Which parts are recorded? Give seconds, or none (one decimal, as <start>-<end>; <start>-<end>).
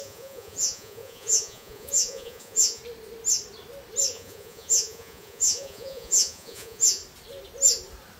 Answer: 2.8-4.1; 7.0-8.2